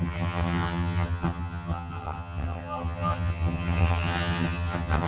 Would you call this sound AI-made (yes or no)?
yes